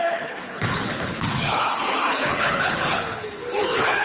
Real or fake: fake